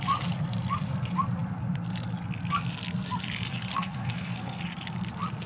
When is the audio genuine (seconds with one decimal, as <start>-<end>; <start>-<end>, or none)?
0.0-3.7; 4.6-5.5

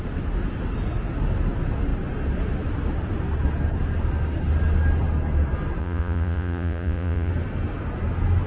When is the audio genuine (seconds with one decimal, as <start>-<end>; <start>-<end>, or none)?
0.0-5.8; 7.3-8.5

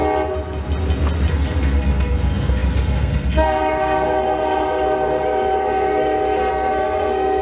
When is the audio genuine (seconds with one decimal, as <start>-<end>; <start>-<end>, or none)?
0.0-1.3

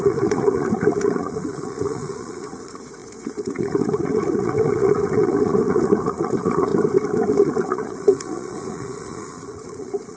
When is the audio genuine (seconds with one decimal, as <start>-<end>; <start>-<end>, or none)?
6.7-7.3